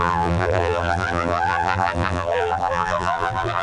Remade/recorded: remade